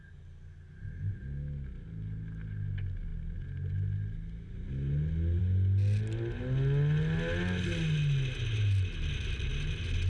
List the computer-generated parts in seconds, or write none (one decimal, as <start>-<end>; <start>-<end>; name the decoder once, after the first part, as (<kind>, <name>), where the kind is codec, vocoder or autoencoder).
none